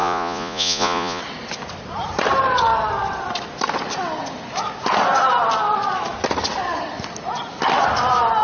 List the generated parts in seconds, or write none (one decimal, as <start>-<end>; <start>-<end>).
0.0-1.2